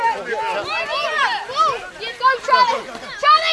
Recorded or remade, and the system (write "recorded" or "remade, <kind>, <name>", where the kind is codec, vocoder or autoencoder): recorded